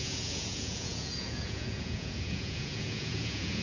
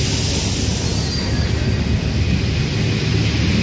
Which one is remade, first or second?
first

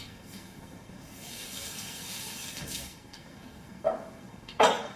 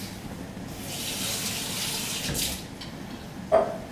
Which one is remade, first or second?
first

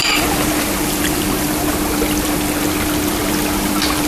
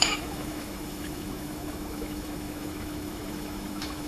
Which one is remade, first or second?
second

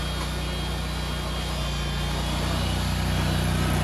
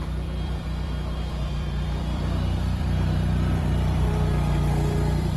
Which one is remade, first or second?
second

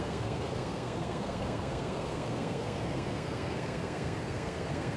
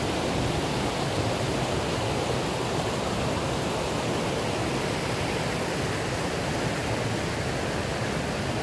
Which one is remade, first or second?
first